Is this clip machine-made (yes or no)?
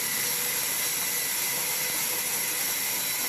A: no